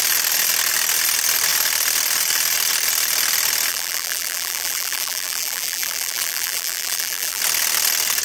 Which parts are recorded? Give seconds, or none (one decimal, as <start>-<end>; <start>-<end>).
0.0-3.7; 7.4-8.2